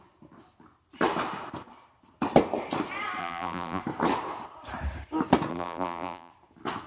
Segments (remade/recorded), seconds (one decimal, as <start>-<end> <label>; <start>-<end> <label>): 0.0-3.2 recorded; 3.2-3.8 remade; 3.8-5.5 recorded; 5.5-6.3 remade; 6.3-6.9 recorded